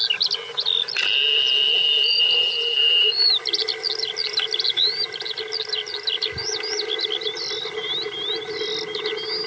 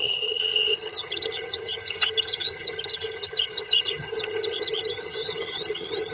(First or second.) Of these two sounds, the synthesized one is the second